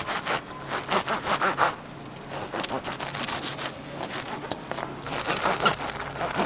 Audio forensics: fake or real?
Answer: real